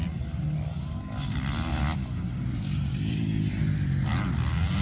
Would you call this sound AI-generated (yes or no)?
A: no